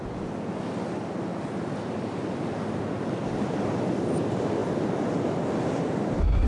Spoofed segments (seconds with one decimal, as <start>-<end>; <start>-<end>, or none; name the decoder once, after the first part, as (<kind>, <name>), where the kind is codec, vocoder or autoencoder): none